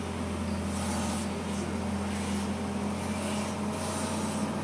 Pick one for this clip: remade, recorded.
recorded